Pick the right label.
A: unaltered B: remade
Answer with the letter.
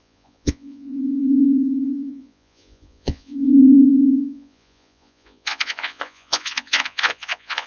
B